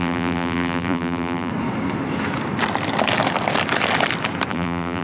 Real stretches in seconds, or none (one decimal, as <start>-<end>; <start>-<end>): 1.5-4.5